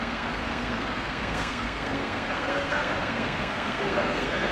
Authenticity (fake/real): fake